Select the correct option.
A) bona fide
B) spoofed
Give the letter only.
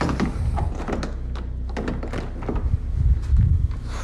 A